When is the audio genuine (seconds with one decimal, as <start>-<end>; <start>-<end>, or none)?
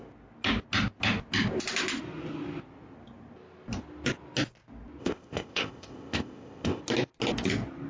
0.0-5.0; 6.8-7.9